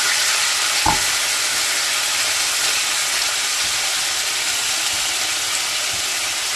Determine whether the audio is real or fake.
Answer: real